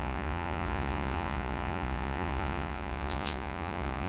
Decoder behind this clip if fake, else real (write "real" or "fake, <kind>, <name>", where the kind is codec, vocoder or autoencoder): fake, vocoder, Vocos